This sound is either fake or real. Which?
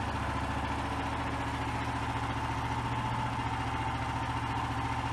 real